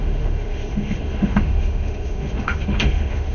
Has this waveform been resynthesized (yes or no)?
yes